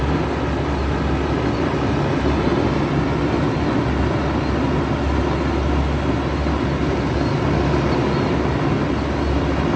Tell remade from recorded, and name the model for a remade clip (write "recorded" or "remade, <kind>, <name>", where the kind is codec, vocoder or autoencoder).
recorded